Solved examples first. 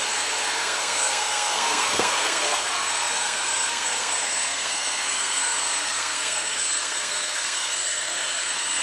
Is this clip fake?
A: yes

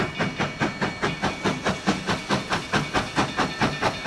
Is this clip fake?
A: no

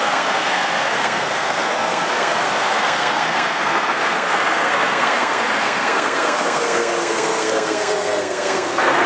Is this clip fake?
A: yes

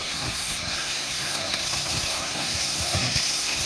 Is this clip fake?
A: yes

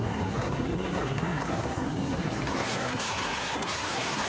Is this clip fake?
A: yes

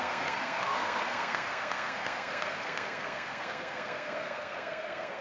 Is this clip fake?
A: yes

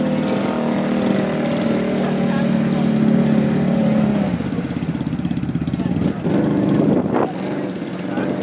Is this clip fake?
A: no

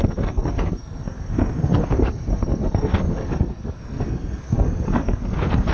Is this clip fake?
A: yes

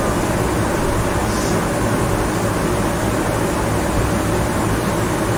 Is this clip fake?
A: no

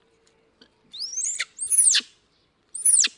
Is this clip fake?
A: no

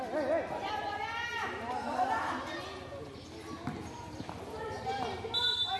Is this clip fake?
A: no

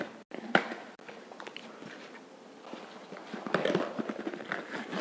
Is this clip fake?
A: no